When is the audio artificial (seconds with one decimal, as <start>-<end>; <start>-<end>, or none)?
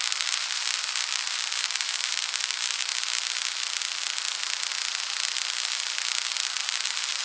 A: 0.0-2.9; 6.6-7.2